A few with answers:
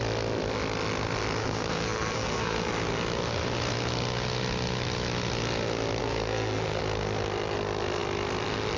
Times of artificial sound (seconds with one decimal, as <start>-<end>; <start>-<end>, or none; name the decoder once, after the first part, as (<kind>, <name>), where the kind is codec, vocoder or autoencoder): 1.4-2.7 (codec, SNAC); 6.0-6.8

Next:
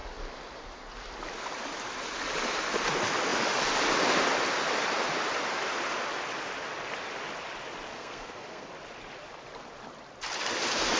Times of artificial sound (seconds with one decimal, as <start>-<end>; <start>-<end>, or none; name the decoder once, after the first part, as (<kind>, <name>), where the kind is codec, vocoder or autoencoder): 7.9-8.7 (codec, SNAC)

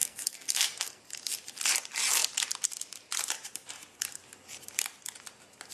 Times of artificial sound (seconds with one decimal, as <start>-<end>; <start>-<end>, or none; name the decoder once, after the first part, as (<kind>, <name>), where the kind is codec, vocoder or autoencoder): 0.0-1.0 (codec, SNAC)

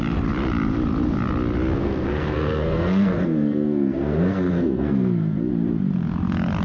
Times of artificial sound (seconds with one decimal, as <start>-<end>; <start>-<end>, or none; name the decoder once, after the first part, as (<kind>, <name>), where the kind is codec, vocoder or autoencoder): 1.8-5.5 (codec, SNAC)